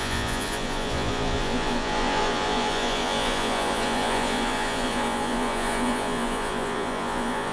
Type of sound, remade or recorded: remade